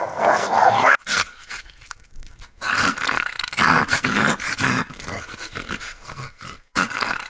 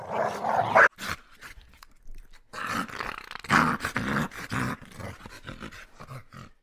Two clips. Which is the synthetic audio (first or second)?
first